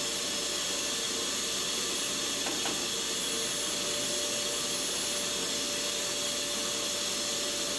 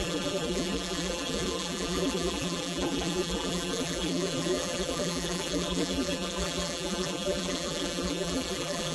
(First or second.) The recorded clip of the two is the first